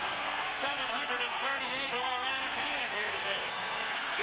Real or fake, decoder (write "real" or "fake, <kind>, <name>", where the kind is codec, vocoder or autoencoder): fake, codec, SNAC